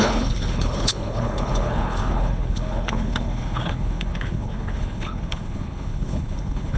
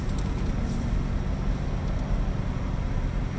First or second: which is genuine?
second